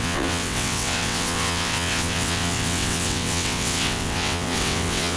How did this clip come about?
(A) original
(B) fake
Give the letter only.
B